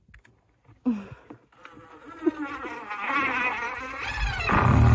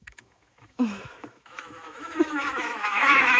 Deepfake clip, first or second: second